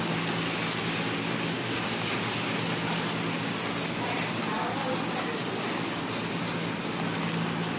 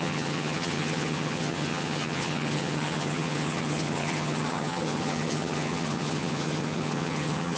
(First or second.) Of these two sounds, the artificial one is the second